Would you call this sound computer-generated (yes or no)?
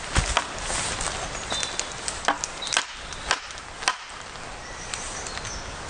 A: no